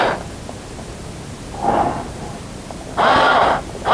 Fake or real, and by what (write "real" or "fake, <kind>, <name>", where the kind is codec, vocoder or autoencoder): real